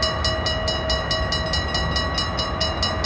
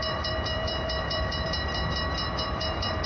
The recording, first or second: first